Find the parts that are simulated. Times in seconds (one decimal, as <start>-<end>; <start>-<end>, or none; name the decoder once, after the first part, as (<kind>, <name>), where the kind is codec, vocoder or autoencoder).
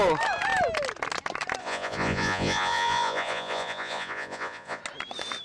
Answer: 1.6-4.8 (vocoder, Vocos)